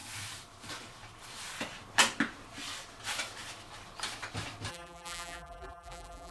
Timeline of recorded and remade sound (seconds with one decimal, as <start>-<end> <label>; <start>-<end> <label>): 0.0-4.7 recorded; 4.7-6.3 remade